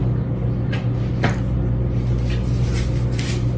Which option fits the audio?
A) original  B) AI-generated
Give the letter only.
A